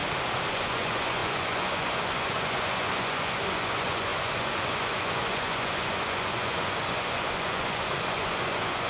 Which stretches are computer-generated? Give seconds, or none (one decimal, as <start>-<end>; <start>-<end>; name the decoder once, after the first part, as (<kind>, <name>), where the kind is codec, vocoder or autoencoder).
0.5-8.9 (vocoder, Vocos)